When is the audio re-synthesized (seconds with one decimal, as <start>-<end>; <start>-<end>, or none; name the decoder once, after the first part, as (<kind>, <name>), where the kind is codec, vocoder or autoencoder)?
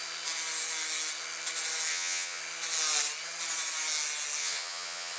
1.9-2.4 (vocoder, HiFi-GAN); 4.4-5.2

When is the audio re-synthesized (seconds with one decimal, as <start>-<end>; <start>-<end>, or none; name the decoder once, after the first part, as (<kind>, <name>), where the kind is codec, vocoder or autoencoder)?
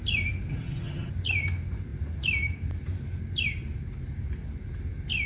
0.5-1.1 (vocoder, HiFi-GAN)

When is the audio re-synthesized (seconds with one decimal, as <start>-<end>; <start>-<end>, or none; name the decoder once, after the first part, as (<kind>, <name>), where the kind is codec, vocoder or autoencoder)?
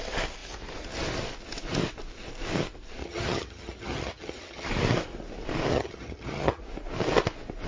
3.0-4.7 (vocoder, HiFi-GAN); 5.7-6.6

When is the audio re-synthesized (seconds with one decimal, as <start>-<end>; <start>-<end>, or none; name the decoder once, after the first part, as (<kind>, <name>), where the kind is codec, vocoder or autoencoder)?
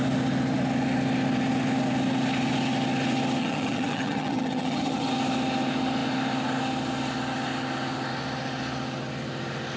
3.4-5.1 (vocoder, HiFi-GAN)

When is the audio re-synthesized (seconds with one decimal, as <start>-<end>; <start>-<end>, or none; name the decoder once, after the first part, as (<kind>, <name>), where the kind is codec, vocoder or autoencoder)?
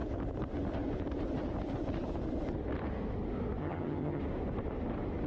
3.6-4.2 (vocoder, HiFi-GAN)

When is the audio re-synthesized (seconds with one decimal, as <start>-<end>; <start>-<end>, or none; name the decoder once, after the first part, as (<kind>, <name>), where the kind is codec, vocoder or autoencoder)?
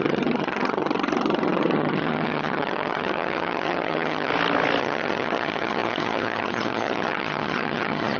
0.0-4.3 (vocoder, HiFi-GAN); 4.8-8.2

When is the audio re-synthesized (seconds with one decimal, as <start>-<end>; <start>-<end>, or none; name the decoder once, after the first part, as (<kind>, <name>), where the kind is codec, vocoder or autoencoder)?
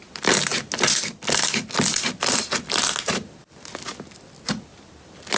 none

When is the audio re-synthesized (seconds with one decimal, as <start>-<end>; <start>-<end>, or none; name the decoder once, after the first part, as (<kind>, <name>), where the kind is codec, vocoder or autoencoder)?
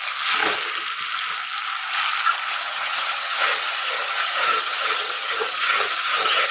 2.5-6.5 (vocoder, HiFi-GAN)